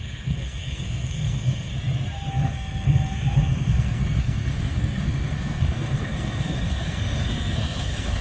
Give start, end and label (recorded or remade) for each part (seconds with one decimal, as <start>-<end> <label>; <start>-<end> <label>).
0.0-1.7 remade; 1.7-2.3 recorded; 2.3-8.2 remade